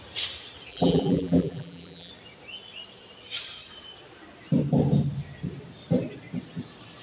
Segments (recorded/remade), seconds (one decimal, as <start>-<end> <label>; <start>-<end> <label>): 0.0-0.7 recorded; 0.7-2.1 remade; 2.1-7.0 recorded